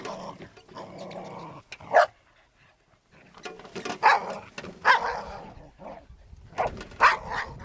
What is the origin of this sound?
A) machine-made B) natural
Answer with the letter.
B